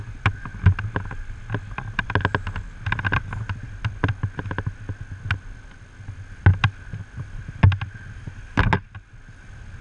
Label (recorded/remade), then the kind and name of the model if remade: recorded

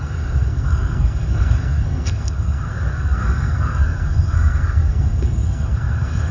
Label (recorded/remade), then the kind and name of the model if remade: remade, codec, SNAC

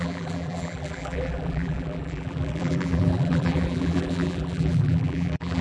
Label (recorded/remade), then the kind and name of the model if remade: remade, vocoder, BigVGAN v2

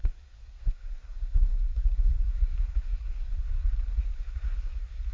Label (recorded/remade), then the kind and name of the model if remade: remade, codec, SNAC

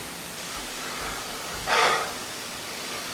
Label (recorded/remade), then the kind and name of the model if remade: remade, codec, DAC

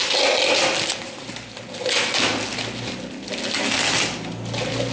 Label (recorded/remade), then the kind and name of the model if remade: recorded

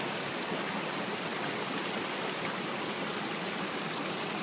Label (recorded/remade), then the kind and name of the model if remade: recorded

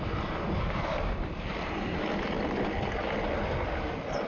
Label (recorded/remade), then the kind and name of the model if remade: recorded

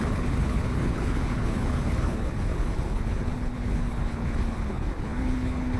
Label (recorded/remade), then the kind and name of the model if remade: remade, codec, HILCodec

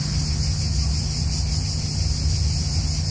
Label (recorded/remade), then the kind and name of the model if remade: recorded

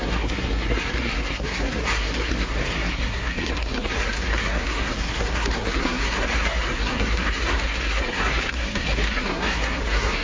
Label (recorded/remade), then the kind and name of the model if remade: remade, codec, SNAC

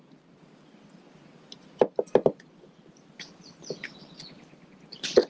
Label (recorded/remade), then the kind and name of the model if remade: recorded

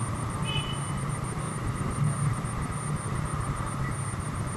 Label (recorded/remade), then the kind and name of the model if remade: recorded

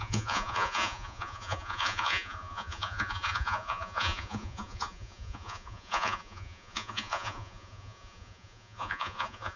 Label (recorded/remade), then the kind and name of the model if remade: remade, vocoder, Vocos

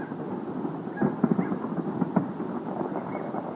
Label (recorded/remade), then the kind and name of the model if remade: recorded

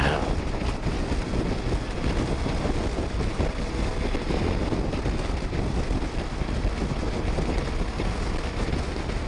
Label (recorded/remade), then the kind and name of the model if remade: recorded